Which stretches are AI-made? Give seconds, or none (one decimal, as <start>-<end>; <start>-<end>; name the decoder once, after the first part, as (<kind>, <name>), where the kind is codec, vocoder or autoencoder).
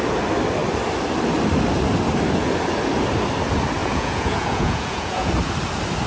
3.8-5.3 (vocoder, Vocos)